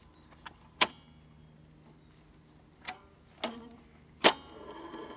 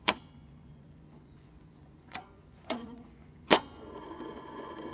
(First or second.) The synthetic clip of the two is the second